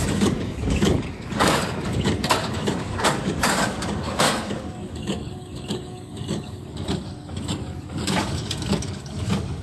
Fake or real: fake